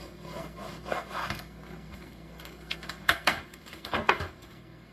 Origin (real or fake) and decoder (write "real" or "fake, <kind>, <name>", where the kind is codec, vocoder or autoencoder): fake, codec, SNAC